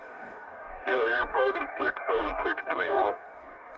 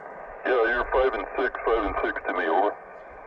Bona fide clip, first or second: second